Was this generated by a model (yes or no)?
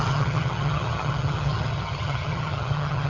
yes